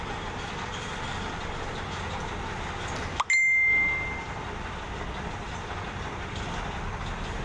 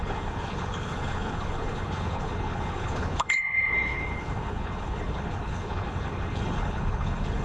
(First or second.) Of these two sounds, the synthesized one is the second